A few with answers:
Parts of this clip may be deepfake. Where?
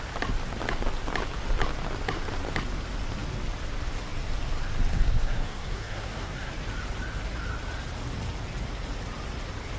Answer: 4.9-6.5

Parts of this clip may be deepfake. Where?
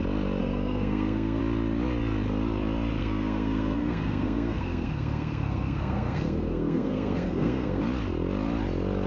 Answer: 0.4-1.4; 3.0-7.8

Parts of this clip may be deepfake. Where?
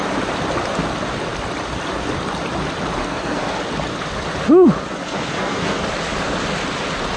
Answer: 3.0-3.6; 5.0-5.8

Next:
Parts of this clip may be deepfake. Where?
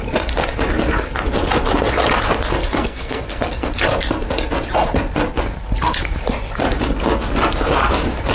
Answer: 2.6-3.7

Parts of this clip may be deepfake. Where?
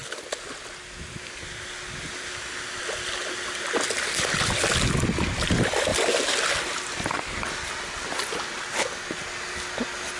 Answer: none